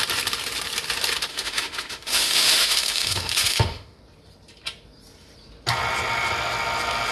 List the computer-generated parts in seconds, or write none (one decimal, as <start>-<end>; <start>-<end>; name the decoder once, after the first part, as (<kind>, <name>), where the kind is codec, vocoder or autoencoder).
1.3-4.0 (autoencoder, DAC-VAE)